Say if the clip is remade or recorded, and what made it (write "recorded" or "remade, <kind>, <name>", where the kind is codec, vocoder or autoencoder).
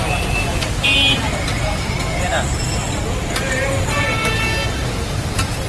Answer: recorded